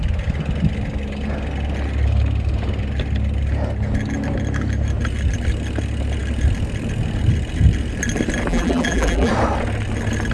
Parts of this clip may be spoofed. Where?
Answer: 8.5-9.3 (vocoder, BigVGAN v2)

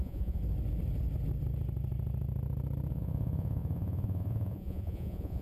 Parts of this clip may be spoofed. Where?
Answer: 0.0-0.4 (vocoder, Vocos); 2.9-5.4

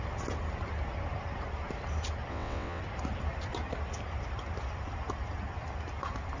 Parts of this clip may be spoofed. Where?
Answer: 2.3-2.8 (vocoder, WaveNeXt)

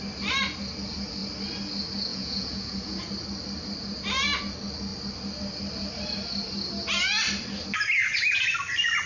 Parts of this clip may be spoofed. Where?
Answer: 2.1-3.1 (vocoder, Vocos)